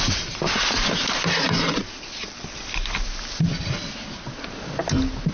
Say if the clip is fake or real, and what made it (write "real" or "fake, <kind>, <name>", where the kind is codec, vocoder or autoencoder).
real